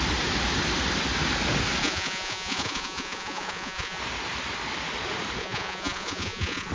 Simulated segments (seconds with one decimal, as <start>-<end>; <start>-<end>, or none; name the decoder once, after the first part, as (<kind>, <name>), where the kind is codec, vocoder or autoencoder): 1.8-4.0 (vocoder, Vocos); 5.4-6.7